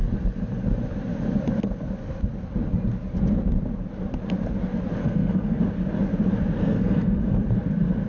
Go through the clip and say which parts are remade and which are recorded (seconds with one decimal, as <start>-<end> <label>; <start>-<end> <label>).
0.0-5.0 recorded; 5.0-5.6 remade; 5.6-6.6 recorded; 6.6-7.2 remade; 7.2-8.1 recorded